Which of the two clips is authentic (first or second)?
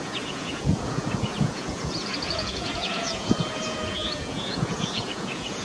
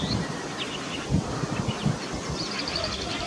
second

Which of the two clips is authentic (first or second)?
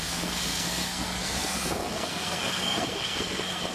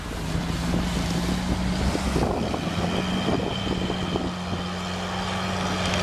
second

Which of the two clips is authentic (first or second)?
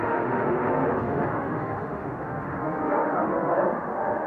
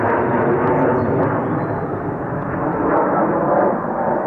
second